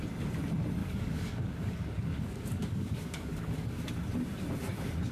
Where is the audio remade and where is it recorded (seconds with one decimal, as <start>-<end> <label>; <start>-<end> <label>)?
0.0-0.8 recorded; 0.8-3.9 remade; 3.9-5.1 recorded